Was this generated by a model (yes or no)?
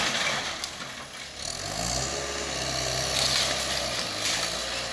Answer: no